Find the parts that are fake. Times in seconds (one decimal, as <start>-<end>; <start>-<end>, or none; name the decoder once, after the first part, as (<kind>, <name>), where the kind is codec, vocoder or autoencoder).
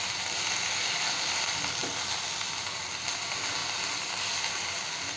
none